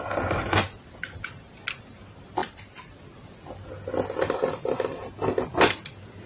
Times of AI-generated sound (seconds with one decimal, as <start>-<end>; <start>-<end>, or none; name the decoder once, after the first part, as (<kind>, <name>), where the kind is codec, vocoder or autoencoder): 2.4-2.9 (vocoder, BigVGAN v2)

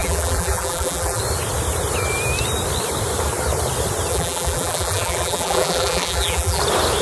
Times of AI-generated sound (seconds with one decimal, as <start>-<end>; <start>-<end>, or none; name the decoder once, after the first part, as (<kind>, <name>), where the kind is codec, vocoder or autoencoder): 0.0-1.2 (vocoder, BigVGAN v2); 4.1-6.6

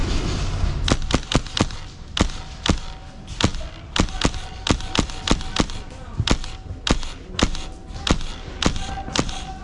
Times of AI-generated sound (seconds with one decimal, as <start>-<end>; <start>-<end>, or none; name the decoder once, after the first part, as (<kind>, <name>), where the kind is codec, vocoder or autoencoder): none

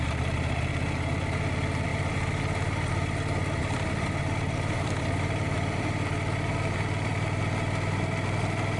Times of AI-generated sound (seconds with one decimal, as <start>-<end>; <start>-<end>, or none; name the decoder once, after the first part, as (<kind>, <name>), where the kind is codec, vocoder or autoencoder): 1.9-2.9 (vocoder, BigVGAN v2); 3.6-7.4